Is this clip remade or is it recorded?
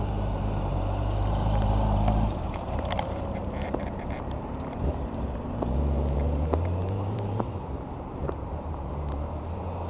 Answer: remade